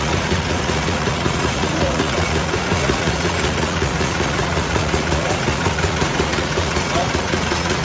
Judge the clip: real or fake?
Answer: fake